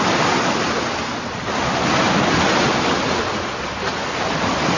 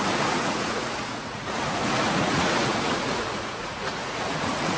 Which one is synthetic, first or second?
second